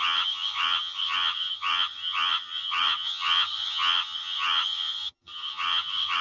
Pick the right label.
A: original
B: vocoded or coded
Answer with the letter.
B